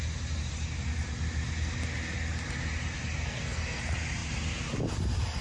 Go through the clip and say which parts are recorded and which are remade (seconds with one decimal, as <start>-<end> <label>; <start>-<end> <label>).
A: 0.0-3.2 recorded; 3.2-3.8 remade; 3.8-5.4 recorded